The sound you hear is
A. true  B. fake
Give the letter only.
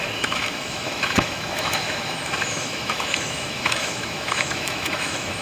B